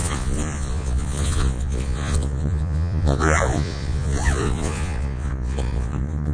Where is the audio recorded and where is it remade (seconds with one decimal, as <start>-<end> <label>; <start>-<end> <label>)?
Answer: 0.0-6.3 remade